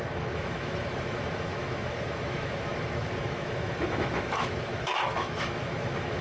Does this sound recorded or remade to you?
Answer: remade